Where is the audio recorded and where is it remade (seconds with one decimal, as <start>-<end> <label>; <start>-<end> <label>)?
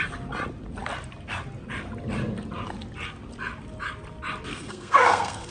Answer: 0.0-4.5 recorded; 4.5-5.5 remade